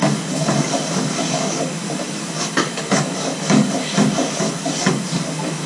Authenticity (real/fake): fake